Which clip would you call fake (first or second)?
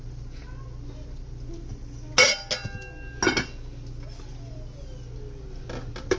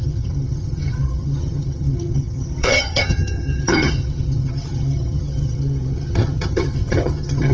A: second